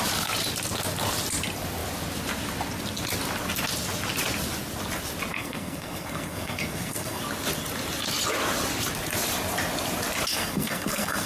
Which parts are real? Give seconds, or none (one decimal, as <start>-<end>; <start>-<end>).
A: 0.0-5.3; 7.2-10.3